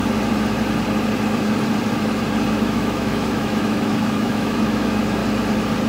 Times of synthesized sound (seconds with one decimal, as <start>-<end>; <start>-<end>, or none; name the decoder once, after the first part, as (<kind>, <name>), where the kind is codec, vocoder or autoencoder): 2.5-5.2 (autoencoder, DAC-VAE)